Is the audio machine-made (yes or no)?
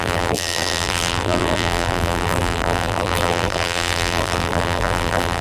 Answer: yes